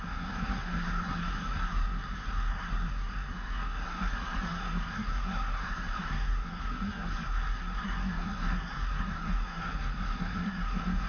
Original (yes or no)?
no